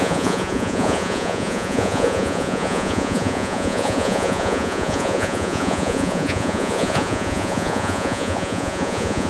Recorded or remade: remade